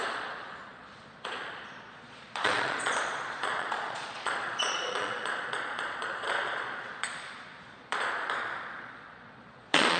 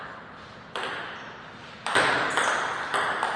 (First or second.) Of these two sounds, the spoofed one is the first